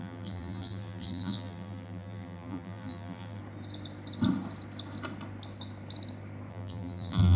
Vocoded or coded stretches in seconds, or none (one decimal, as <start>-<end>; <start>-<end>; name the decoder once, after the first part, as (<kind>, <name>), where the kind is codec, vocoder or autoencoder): 0.0-3.4 (vocoder, BigVGAN v2); 6.5-7.4